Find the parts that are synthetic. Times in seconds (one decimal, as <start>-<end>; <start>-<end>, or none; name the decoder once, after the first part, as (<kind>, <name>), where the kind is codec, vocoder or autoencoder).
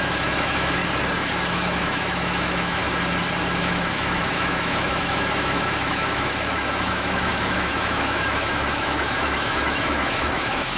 0.0-0.8 (autoencoder, DAC-VAE); 1.5-2.8; 3.6-10.8